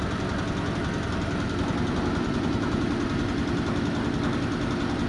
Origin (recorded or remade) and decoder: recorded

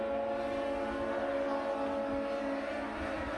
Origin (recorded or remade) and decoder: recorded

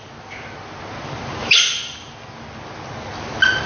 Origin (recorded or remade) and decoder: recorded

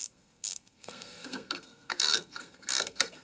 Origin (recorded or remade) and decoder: remade, codec, SNAC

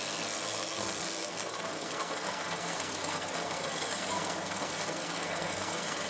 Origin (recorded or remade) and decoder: remade, codec, SNAC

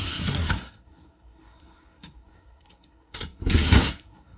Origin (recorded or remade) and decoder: remade, codec, SNAC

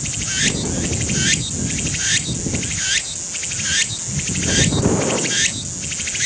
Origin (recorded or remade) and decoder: recorded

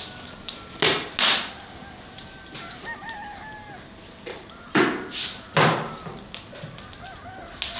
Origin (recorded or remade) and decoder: recorded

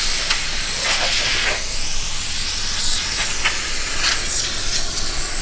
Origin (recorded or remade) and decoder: recorded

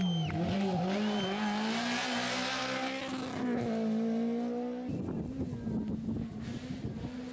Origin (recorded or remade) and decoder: recorded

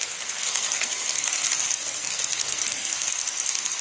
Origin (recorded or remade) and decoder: remade, codec, SNAC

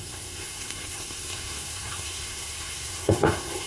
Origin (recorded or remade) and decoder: remade, codec, SNAC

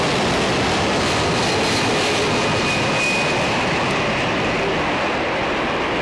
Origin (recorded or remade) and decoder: recorded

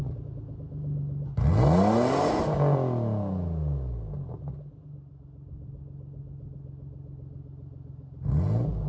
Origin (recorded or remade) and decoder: recorded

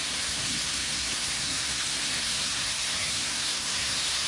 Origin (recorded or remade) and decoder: remade, codec, SNAC